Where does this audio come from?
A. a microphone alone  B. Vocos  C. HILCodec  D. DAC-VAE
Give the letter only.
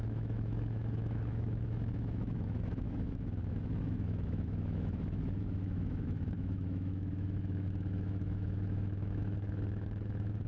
D